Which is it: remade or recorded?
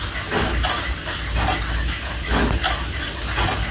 recorded